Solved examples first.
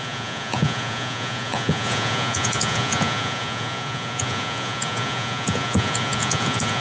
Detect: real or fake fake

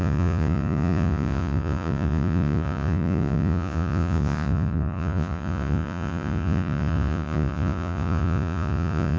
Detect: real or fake fake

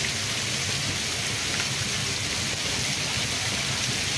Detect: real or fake real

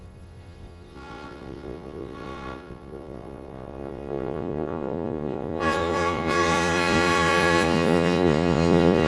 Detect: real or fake fake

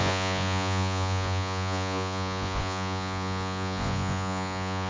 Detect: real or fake fake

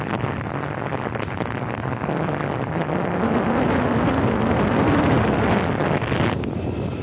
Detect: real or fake real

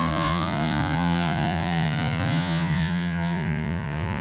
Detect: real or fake fake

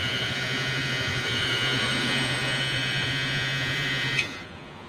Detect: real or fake fake